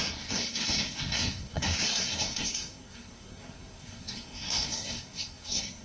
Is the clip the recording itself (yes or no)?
no